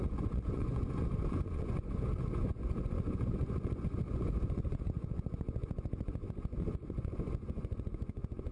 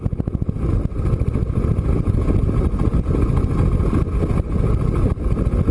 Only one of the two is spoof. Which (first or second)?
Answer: first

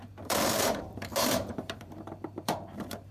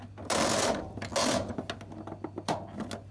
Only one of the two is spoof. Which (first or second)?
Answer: first